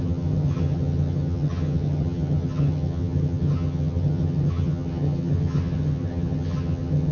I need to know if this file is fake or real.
fake